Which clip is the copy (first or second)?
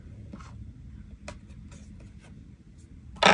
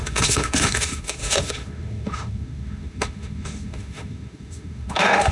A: second